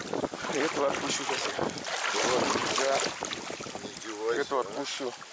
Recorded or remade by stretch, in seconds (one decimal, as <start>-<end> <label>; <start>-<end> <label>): 0.0-5.3 recorded